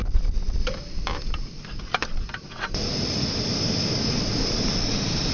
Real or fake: real